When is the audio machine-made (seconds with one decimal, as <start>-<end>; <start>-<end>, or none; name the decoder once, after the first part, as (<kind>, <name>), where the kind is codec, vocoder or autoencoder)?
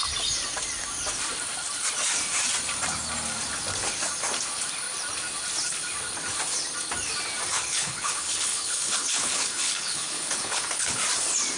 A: 7.5-11.0 (codec, HILCodec)